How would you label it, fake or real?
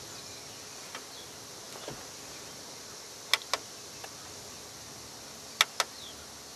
real